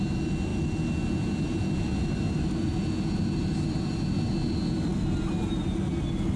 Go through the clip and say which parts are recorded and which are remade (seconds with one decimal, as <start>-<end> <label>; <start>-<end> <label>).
0.0-6.4 recorded